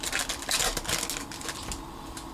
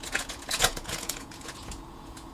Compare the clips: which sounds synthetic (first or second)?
second